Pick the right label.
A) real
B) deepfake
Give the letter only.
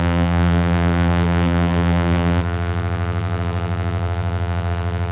B